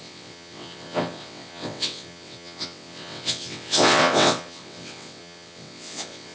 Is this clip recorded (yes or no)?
no